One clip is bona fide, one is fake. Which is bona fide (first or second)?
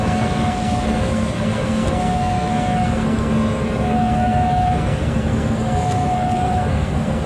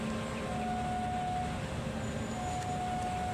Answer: second